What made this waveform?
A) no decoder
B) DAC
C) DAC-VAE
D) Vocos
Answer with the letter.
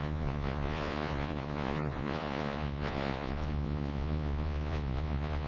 D